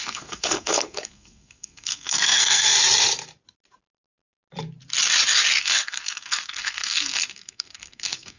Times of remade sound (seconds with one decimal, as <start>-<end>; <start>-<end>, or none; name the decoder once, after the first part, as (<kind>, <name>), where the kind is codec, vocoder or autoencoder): 0.0-2.7 (codec, SNAC); 5.6-8.4